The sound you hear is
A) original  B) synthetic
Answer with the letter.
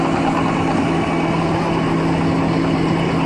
A